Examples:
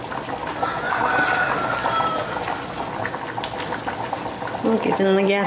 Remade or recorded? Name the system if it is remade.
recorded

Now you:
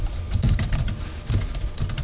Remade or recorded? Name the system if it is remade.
recorded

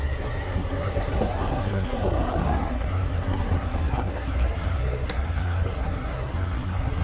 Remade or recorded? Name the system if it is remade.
remade, codec, SNAC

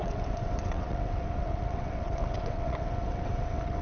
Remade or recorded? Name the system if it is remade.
remade, vocoder, WaveNeXt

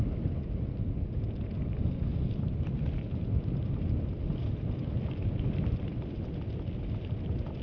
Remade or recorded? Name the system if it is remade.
recorded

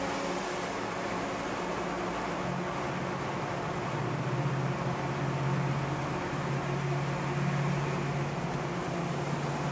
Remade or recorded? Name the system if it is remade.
recorded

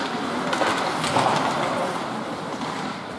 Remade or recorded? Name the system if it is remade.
recorded